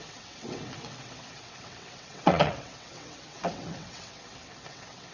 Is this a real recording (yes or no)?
no